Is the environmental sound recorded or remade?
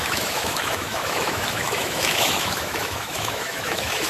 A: remade